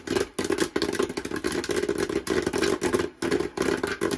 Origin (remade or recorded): recorded